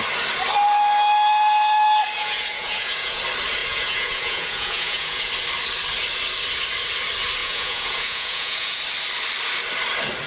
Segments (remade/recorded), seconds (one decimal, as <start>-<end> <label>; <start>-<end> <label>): 0.0-2.2 recorded; 2.2-3.2 remade; 3.2-3.6 recorded; 3.6-5.3 remade; 5.3-7.4 recorded; 7.4-8.8 remade; 8.8-10.3 recorded